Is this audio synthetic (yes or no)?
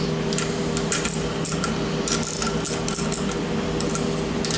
no